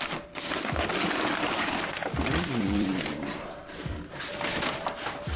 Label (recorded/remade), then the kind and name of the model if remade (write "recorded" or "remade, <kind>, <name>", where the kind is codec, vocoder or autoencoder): remade, vocoder, BigVGAN v2